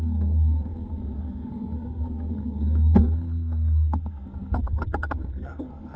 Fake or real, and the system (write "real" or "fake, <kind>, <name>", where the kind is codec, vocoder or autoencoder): fake, codec, SNAC